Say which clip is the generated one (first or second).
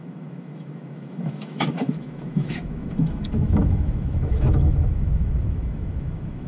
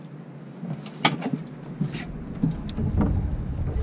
first